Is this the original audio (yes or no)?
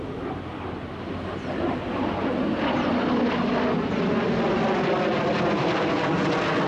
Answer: yes